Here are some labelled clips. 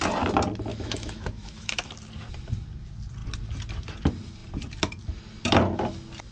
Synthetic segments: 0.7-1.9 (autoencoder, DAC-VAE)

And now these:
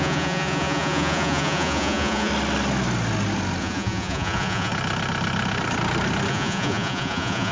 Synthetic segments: 0.0-2.3 (vocoder, Vocos); 3.6-4.7; 6.3-7.5

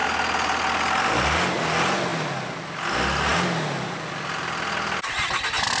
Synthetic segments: none

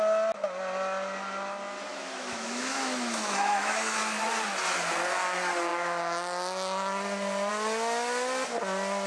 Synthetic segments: 1.9-4.0 (autoencoder, DAC-VAE)

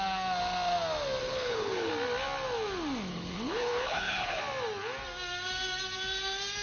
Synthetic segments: 1.2-1.9 (codec, HILCodec); 3.1-4.4

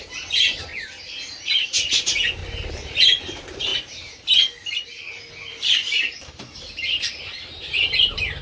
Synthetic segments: 0.0-0.7 (vocoder, BigVGAN v2); 1.9-2.4; 3.2-3.7; 5.5-8.4

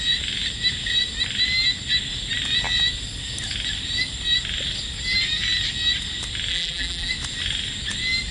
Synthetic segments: 6.5-7.1 (vocoder, BigVGAN v2)

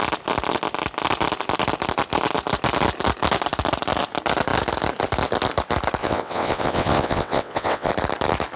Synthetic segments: 6.0-7.9 (vocoder, WaveNeXt)